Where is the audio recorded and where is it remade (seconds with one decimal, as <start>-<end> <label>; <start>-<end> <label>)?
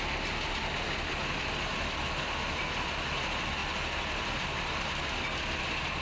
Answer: 0.0-6.0 recorded